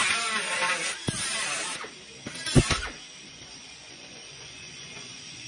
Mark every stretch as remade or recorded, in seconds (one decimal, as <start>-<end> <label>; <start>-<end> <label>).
0.0-3.3 recorded; 3.3-5.5 remade